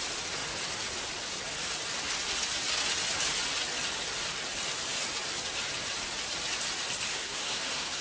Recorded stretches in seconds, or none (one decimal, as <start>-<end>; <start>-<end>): 0.0-7.1